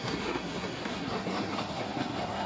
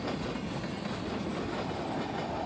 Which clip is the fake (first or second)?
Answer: first